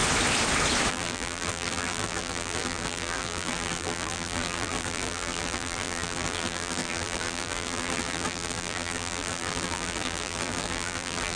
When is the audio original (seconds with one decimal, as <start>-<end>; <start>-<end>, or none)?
0.0-0.9